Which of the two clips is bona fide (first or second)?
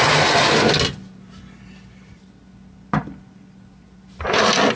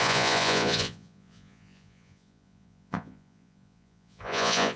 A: first